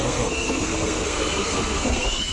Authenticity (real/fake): fake